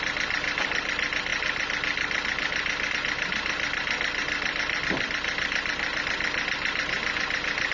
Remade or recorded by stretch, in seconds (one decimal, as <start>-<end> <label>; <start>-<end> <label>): 0.0-7.7 recorded